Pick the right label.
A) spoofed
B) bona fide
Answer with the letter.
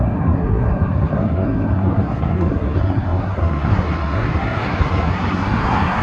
A